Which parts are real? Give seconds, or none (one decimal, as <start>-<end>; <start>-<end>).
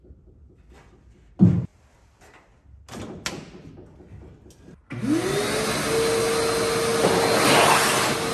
0.0-8.3